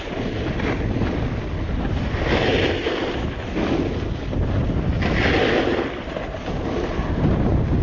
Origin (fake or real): real